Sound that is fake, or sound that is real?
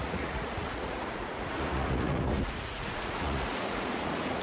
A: fake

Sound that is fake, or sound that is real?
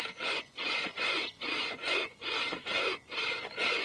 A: fake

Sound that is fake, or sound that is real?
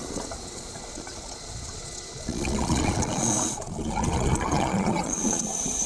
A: fake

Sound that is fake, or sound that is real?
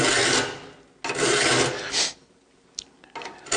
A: real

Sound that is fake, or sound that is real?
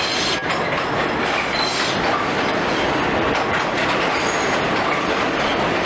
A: real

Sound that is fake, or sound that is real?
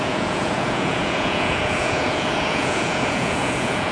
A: fake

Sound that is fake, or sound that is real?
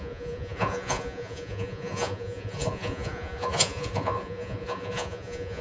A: fake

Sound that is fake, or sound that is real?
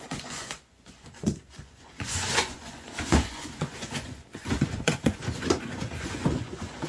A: fake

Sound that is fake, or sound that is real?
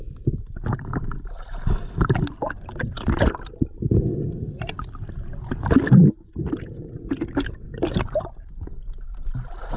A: real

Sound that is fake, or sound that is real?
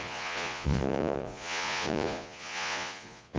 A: fake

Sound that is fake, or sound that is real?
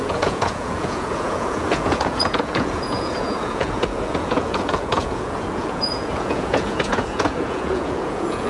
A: fake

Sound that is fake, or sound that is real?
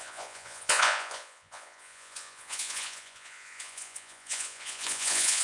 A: fake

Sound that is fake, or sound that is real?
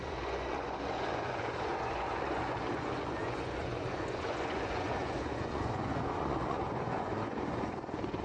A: fake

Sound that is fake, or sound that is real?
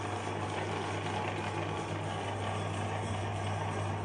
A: real